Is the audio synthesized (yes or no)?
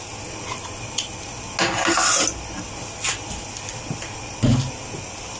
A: no